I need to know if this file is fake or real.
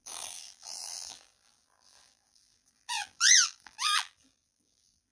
fake